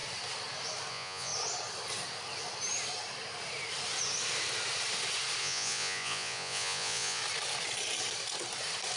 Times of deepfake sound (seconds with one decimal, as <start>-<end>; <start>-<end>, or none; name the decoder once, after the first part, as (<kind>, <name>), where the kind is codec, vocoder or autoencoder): 0.9-1.3 (vocoder, Vocos); 5.4-7.2